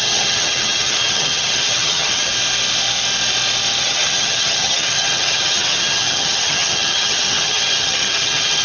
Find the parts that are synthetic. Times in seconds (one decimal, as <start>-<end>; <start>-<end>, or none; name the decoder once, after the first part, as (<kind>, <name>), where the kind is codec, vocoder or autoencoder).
0.0-2.3 (vocoder, HiFi-GAN); 3.8-8.6